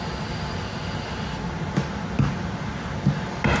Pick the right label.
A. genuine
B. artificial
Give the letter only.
A